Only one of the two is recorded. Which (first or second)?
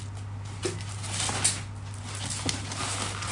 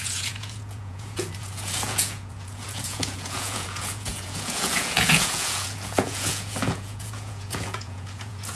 first